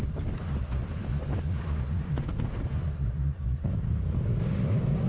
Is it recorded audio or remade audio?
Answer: recorded